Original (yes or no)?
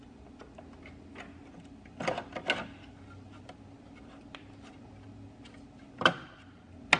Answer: yes